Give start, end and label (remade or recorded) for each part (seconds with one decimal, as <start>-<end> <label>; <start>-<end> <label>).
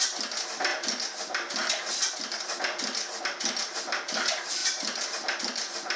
0.0-6.0 recorded